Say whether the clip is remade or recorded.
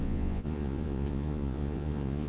remade